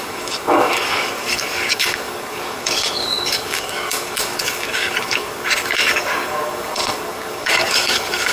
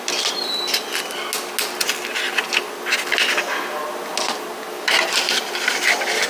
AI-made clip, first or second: first